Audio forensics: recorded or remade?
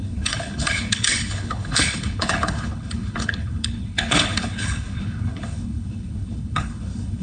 remade